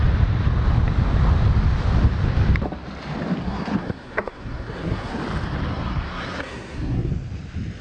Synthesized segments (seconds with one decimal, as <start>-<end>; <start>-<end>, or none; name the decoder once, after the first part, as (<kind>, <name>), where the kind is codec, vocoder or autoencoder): 3.4-5.2 (codec, SNAC); 5.7-7.1